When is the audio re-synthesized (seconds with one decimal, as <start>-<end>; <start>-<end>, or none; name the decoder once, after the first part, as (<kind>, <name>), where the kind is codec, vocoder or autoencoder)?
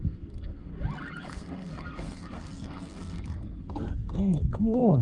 0.0-0.7 (codec, SNAC); 1.3-5.0